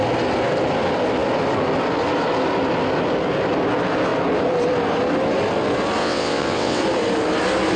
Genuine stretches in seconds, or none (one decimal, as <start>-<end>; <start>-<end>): 0.0-6.0; 6.8-7.8

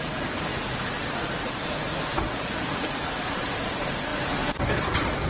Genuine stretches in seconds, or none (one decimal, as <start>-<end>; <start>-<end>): 0.0-5.3

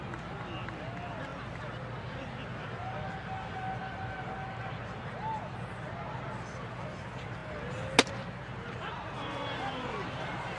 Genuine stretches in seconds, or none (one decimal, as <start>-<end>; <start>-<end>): 0.0-10.6

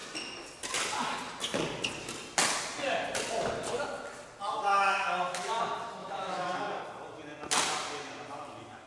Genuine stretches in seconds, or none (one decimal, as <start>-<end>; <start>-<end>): 0.0-4.7; 5.6-6.0; 6.8-8.9

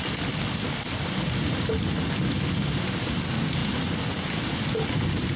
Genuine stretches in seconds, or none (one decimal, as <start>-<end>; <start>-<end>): 0.0-5.4

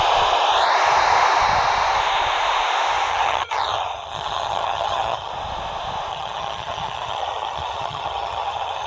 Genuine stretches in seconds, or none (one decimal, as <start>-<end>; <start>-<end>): 0.0-3.1; 5.3-6.1

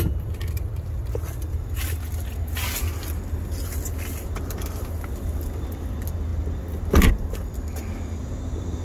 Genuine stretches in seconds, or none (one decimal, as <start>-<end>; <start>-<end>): 0.0-8.8